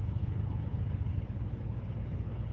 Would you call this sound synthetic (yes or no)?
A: yes